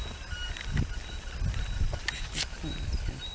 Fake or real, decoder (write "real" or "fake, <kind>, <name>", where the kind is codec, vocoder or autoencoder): real